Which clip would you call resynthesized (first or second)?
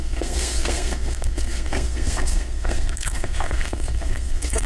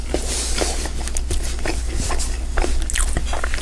first